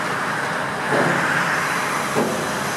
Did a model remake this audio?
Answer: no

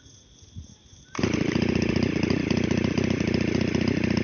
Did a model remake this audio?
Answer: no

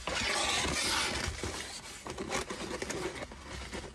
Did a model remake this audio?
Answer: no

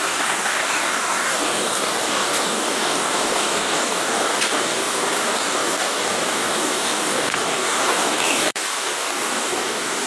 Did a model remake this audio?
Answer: yes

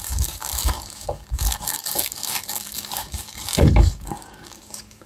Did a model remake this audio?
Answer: yes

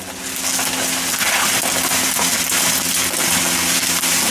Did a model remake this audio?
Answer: no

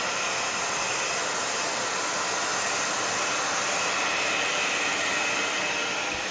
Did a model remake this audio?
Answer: no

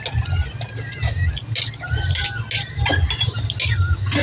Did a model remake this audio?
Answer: no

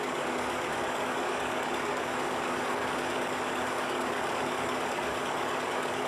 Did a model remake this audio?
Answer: yes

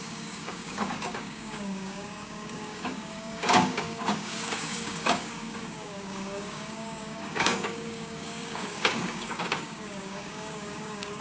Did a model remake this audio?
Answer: yes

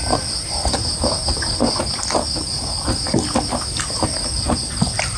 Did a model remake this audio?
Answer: no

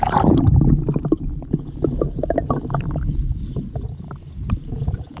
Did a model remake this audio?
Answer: no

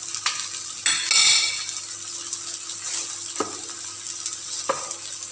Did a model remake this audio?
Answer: no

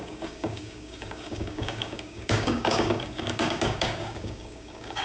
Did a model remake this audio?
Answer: yes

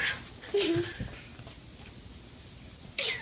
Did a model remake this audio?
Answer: no